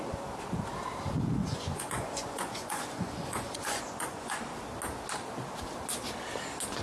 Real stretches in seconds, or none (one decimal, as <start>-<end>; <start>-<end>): 0.0-1.4; 4.4-6.8